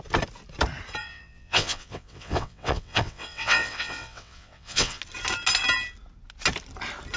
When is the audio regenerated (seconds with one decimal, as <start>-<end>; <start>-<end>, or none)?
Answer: 1.0-5.0